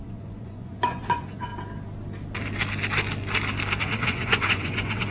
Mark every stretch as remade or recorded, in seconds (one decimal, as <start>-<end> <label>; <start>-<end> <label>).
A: 0.0-1.5 remade; 1.5-3.8 recorded; 3.8-5.1 remade